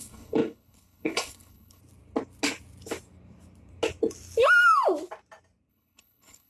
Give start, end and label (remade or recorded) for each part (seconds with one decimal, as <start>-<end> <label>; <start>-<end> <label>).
0.0-1.8 remade; 1.8-5.7 recorded; 5.7-6.5 remade